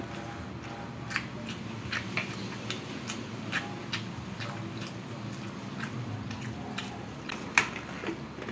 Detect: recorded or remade recorded